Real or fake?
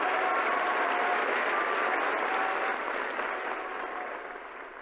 real